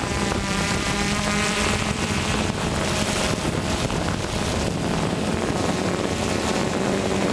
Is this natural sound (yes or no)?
no